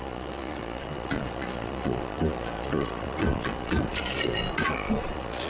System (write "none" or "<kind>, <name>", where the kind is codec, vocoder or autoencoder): vocoder, Vocos